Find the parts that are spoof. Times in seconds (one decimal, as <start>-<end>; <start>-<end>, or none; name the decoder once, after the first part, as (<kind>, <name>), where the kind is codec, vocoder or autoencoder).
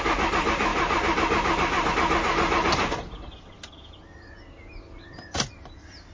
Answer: none